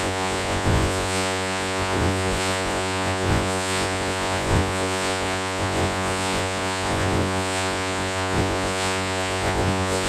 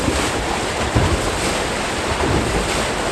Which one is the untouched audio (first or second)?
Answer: second